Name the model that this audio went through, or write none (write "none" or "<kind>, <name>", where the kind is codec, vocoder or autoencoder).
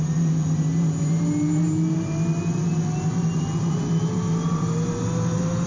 none